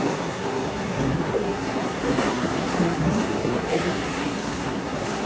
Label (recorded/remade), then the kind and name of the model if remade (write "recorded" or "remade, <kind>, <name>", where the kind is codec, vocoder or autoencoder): remade, codec, SNAC